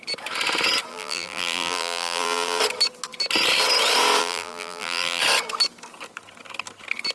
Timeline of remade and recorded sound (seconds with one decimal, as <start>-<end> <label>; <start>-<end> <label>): 0.0-0.9 recorded; 0.9-2.6 remade; 2.6-4.2 recorded; 4.2-5.2 remade; 5.2-7.1 recorded